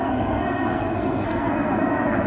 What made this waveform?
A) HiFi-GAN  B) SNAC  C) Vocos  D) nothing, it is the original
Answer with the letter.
B